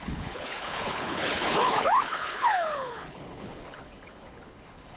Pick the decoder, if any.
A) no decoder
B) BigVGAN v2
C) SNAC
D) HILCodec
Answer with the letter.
D